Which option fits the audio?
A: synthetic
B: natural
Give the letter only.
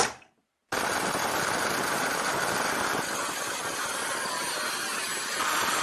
A